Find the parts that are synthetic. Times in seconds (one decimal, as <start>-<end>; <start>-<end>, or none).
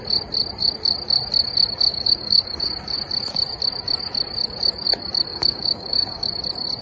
1.9-2.6; 5.3-6.3